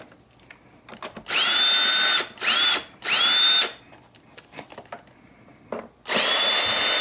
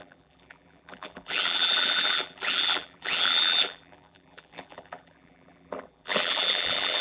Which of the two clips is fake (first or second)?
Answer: second